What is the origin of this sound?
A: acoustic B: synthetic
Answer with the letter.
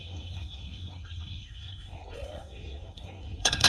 B